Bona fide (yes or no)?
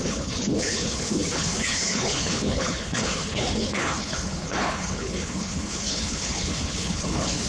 no